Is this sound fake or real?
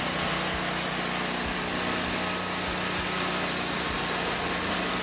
real